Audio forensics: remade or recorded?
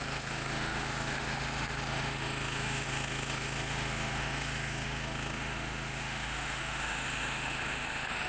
remade